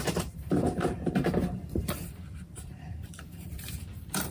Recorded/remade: remade